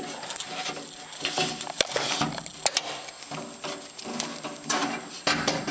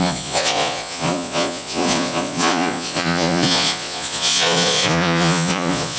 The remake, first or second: second